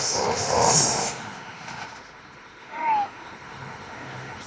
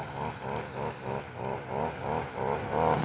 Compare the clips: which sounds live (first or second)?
second